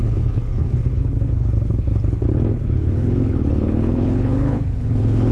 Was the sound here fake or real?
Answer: fake